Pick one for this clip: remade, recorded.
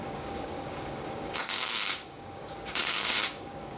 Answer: remade